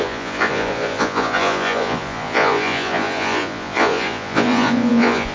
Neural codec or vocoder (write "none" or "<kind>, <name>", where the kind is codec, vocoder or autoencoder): vocoder, Vocos